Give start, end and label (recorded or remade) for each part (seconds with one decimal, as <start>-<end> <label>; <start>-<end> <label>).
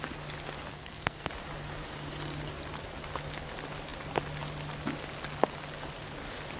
0.0-0.7 recorded; 0.7-1.3 remade; 1.3-6.6 recorded